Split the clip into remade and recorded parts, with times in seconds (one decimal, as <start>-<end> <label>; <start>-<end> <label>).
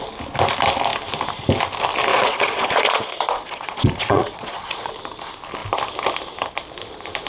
0.0-2.1 recorded; 2.1-4.9 remade; 4.9-7.3 recorded